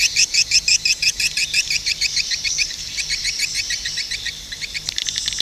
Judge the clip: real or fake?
real